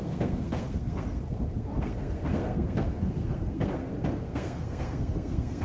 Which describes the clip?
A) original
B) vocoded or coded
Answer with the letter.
B